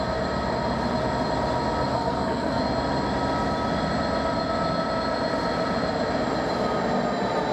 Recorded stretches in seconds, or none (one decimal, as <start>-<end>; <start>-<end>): 0.0-1.9; 2.6-7.5